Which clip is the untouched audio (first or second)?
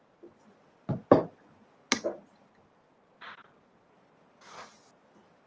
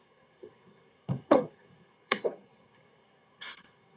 first